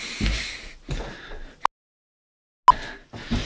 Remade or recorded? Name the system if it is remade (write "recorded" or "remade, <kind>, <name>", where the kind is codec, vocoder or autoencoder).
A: recorded